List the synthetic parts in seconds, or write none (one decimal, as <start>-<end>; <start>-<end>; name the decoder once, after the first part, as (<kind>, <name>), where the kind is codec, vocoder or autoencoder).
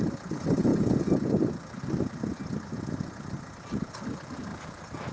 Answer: none